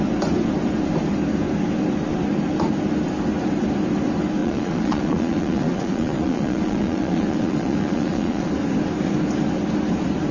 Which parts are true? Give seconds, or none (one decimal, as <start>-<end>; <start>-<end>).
0.0-4.4; 8.5-10.3